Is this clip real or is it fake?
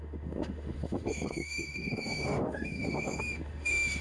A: fake